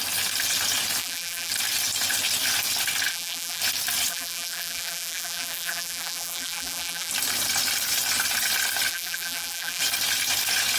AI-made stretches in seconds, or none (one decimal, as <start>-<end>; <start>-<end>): 1.0-1.5; 3.1-3.6; 4.1-7.1; 8.9-9.8